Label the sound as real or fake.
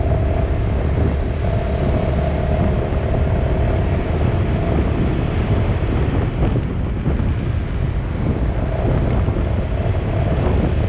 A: real